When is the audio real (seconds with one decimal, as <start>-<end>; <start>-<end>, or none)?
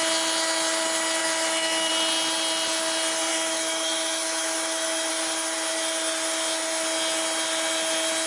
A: 0.0-1.2; 1.9-3.3; 5.1-8.3